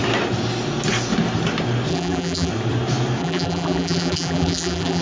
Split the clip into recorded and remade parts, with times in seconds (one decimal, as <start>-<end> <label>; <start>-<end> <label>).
0.0-1.9 recorded; 1.9-2.5 remade; 2.5-3.2 recorded; 3.2-5.0 remade